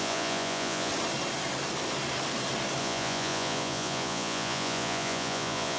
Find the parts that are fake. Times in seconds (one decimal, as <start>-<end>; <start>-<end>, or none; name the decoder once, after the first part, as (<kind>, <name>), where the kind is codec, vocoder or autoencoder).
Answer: 0.0-0.9 (vocoder, Vocos); 2.8-5.8